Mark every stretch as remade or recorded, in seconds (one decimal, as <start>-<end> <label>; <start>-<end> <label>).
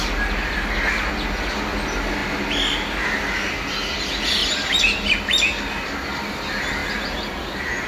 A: 0.0-6.8 recorded; 6.8-7.3 remade; 7.3-7.9 recorded